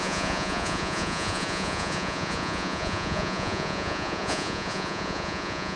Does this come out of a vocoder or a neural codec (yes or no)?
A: yes